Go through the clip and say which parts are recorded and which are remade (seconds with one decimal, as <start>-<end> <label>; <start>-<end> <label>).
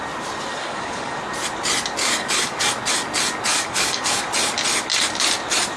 0.0-0.5 recorded; 0.5-1.2 remade; 1.2-2.0 recorded; 2.0-2.7 remade; 2.7-3.5 recorded; 3.5-4.2 remade; 4.2-5.8 recorded